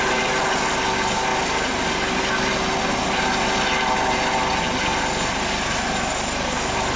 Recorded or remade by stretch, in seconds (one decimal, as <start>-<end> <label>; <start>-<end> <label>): 0.0-7.0 recorded